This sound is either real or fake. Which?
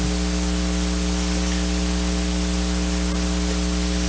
real